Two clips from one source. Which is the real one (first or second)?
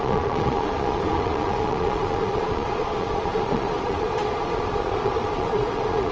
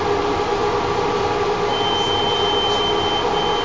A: second